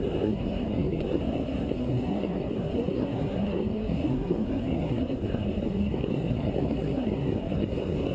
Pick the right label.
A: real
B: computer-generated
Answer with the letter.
B